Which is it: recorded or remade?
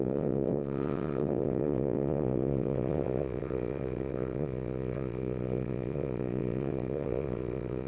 remade